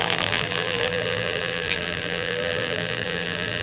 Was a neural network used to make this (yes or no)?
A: yes